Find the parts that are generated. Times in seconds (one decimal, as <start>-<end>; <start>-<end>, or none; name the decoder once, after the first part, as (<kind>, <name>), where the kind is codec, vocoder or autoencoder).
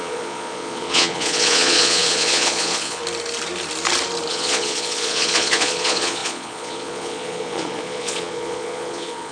0.0-3.0 (vocoder, Vocos); 4.3-9.3